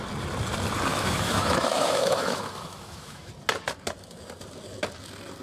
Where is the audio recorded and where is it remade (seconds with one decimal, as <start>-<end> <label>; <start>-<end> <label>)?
0.0-0.9 recorded; 0.9-3.3 remade; 3.3-5.4 recorded